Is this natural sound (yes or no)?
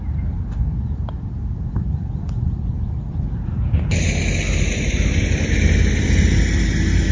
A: yes